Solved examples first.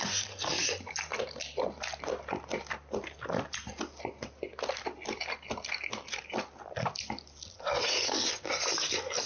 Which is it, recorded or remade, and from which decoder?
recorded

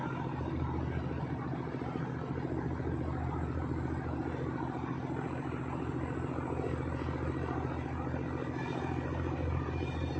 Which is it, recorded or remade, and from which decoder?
recorded